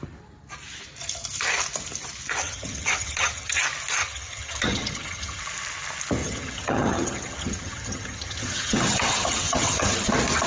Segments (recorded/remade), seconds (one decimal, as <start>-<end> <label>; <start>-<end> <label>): 0.0-2.4 recorded; 2.4-3.6 remade; 3.6-4.0 recorded; 4.0-5.4 remade; 5.4-6.2 recorded; 6.2-10.1 remade; 10.1-10.5 recorded